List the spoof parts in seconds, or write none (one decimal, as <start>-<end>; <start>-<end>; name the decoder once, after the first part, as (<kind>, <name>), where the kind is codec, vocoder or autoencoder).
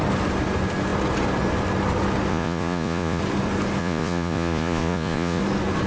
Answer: 2.3-3.2 (vocoder, Vocos); 3.8-5.4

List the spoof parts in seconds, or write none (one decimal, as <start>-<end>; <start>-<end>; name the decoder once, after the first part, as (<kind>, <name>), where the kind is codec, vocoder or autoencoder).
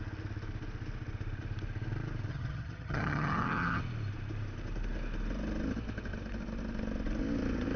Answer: 2.3-3.8 (vocoder, HiFi-GAN)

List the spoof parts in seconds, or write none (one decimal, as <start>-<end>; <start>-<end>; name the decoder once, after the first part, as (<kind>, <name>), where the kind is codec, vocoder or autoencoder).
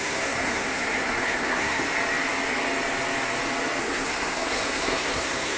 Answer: 0.0-1.8 (codec, SNAC); 3.8-5.6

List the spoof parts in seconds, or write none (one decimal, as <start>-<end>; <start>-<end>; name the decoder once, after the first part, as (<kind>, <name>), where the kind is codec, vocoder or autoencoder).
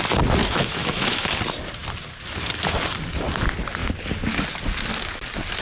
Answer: 0.4-1.3 (autoencoder, DAC-VAE)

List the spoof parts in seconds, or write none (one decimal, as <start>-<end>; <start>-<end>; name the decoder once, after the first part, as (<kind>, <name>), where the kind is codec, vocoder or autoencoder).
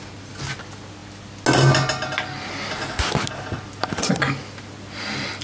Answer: none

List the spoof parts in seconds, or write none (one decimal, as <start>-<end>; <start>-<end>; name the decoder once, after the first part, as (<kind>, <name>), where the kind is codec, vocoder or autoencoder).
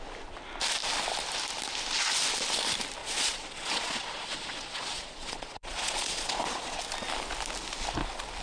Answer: 3.0-6.8 (vocoder, Vocos)